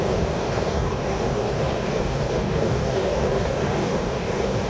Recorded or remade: remade